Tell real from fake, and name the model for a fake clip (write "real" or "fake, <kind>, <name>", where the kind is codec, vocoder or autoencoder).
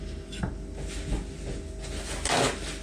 real